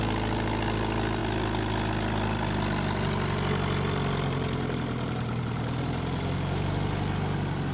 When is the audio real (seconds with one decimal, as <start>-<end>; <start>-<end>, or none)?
0.0-7.7